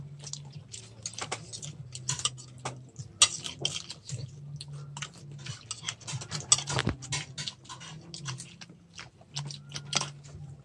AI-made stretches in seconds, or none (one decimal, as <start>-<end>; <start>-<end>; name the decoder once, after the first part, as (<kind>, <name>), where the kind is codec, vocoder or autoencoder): none